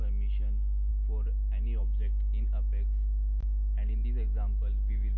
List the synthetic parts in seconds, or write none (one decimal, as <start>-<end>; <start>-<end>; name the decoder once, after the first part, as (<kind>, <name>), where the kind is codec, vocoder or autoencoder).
none